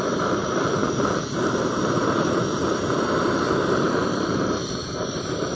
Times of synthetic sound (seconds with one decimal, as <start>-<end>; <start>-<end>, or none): 0.0-2.0; 2.6-5.6